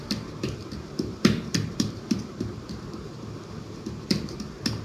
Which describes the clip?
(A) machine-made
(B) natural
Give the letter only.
A